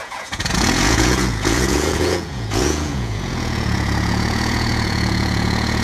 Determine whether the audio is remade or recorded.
remade